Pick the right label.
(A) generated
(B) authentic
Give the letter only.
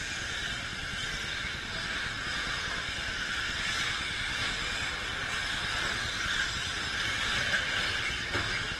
B